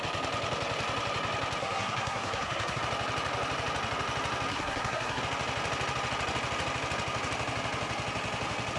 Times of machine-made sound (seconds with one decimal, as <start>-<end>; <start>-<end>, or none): 1.6-2.8; 4.5-5.2